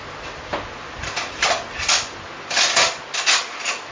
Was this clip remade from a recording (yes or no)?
no